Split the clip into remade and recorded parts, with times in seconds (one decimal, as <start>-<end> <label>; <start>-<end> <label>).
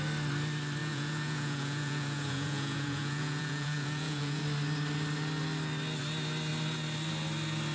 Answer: 0.0-0.8 recorded; 0.8-4.4 remade; 4.4-7.7 recorded